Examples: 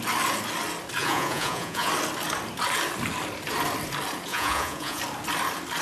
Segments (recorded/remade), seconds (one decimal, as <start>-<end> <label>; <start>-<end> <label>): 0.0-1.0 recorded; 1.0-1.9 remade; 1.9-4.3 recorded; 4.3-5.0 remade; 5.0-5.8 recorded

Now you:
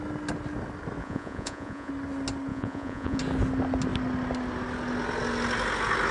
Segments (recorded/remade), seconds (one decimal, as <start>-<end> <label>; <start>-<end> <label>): 0.0-1.0 recorded; 1.0-1.9 remade; 1.9-2.5 recorded; 2.5-3.2 remade; 3.2-6.1 recorded

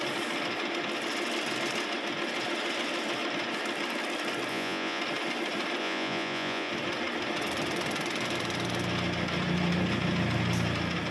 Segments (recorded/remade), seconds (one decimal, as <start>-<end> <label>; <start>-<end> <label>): 0.0-4.5 recorded; 4.5-5.0 remade; 5.0-5.8 recorded; 5.8-6.7 remade; 6.7-11.1 recorded

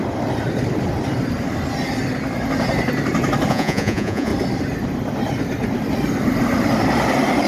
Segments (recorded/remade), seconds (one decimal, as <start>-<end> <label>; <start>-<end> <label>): 0.0-3.5 recorded; 3.5-4.3 remade; 4.3-7.5 recorded

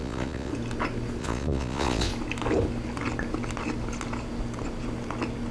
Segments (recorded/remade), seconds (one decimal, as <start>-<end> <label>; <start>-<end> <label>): 0.0-0.5 remade; 0.5-1.2 recorded; 1.2-2.1 remade; 2.1-5.5 recorded

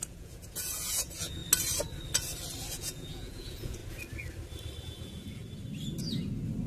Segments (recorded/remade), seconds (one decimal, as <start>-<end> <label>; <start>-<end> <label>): 0.0-1.4 remade; 1.4-2.7 recorded; 2.7-3.8 remade; 3.8-4.8 recorded; 4.8-5.4 remade; 5.4-6.7 recorded

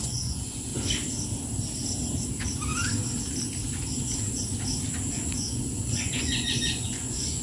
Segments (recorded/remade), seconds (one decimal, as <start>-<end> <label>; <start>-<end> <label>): 0.0-0.7 remade; 0.7-5.1 recorded; 5.1-7.4 remade